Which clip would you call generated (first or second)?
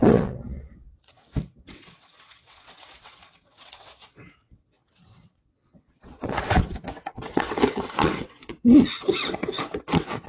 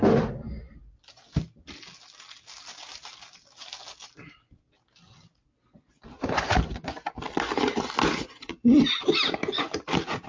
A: first